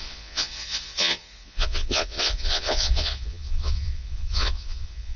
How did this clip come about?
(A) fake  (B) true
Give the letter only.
A